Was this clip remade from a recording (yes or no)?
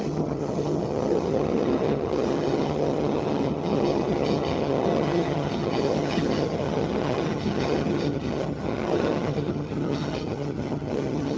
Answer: yes